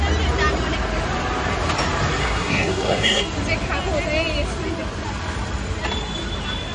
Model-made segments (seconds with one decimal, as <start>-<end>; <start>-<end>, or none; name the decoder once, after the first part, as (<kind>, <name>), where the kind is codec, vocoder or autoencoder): 2.2-3.2 (codec, SNAC)